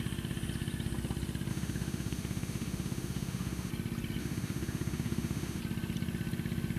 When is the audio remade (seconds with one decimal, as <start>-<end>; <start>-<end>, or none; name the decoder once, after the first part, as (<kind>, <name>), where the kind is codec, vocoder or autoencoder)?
1.5-3.7 (autoencoder, DAC-VAE); 4.2-5.6